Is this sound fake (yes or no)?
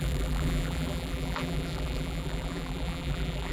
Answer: yes